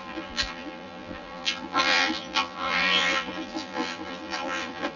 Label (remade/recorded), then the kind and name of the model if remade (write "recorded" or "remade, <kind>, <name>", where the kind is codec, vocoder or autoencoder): remade, vocoder, BigVGAN v2